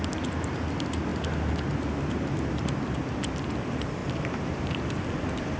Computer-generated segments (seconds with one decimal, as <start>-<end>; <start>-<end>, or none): 4.0-4.8